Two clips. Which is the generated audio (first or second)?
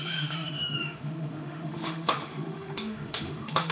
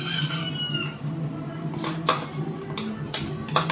first